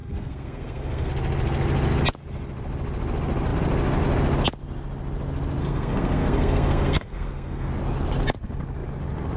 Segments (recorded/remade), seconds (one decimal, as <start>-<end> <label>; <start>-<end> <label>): 0.0-1.1 remade; 1.1-5.6 recorded; 5.6-7.7 remade; 7.7-9.4 recorded